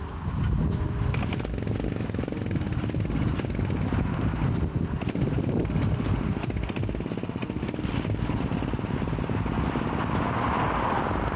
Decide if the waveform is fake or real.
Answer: real